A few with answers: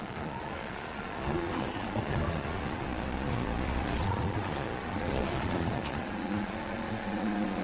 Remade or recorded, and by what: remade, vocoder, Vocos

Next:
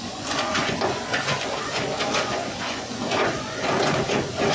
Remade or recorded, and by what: remade, vocoder, Vocos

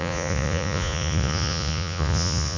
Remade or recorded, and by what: remade, vocoder, Vocos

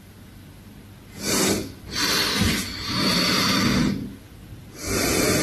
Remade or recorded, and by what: recorded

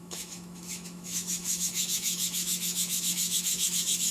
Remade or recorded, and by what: remade, autoencoder, DAC-VAE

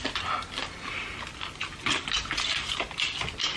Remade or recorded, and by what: recorded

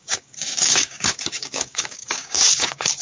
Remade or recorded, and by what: remade, codec, DAC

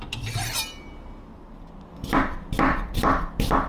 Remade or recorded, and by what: recorded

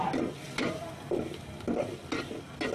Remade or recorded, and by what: recorded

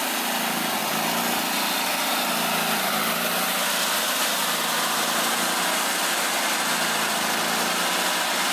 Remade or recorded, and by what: recorded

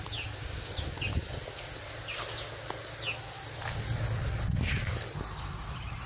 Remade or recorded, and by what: recorded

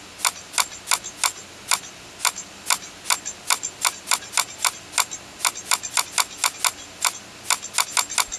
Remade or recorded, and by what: recorded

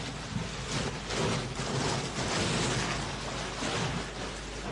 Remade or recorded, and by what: recorded